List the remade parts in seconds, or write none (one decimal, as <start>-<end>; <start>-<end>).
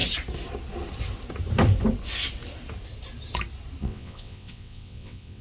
3.8-5.4